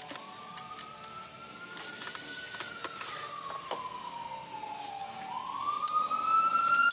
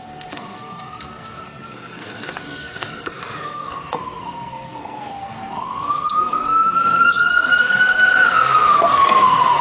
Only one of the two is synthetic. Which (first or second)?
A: second